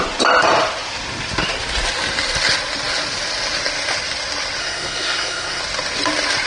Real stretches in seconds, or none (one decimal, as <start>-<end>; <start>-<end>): 0.0-4.6; 5.6-6.5